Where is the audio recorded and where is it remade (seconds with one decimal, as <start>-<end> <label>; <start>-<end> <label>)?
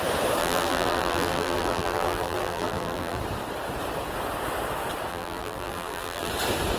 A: 0.0-0.4 recorded; 0.4-3.2 remade; 3.2-5.1 recorded; 5.1-6.3 remade; 6.3-6.8 recorded